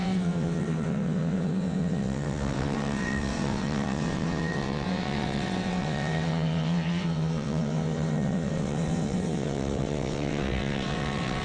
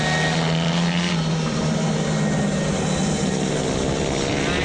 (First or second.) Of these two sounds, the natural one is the second